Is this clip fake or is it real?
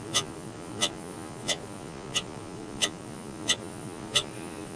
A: fake